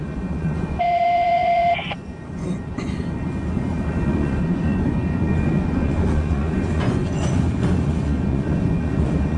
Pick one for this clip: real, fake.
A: fake